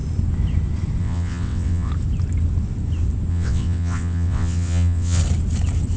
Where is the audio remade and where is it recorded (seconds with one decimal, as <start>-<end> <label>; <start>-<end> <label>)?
0.0-1.0 recorded; 1.0-1.9 remade; 1.9-3.3 recorded; 3.3-5.2 remade; 5.2-6.0 recorded